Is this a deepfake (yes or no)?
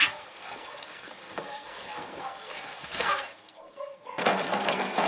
yes